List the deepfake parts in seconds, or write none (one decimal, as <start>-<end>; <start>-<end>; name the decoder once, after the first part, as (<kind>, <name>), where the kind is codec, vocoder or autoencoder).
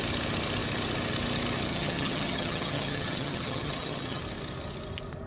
1.7-4.2 (vocoder, HiFi-GAN)